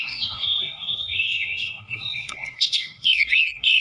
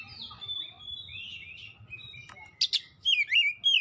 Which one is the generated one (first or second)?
first